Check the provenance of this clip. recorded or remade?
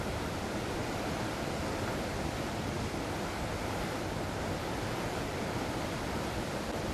remade